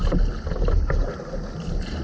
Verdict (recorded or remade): recorded